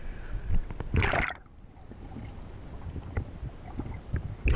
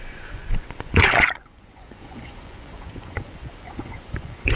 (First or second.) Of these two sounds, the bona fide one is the first